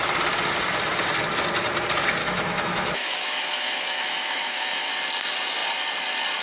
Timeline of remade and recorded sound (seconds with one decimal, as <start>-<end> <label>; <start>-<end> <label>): 0.0-2.2 recorded; 2.2-4.9 remade; 4.9-6.4 recorded